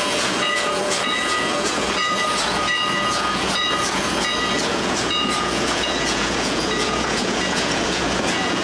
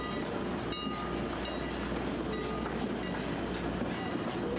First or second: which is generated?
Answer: first